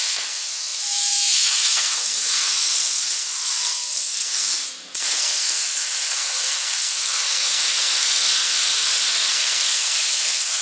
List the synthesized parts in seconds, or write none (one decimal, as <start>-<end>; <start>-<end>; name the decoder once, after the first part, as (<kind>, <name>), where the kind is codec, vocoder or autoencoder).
0.0-10.6 (codec, SNAC)